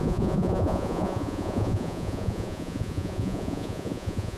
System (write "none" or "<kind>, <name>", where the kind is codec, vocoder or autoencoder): vocoder, Vocos